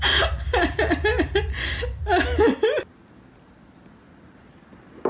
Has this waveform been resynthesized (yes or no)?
no